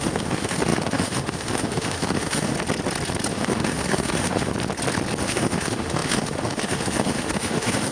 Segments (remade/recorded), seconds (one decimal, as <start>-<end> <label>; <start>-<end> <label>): 0.0-2.5 remade; 2.5-3.3 recorded; 3.3-4.5 remade; 4.5-5.2 recorded; 5.2-7.9 remade